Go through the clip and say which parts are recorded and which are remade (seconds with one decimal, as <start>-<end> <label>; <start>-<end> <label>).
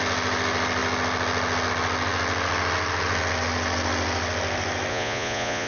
0.0-4.9 recorded; 4.9-5.7 remade